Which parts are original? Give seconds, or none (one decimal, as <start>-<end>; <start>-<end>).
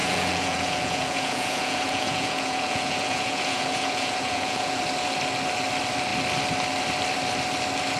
4.8-8.0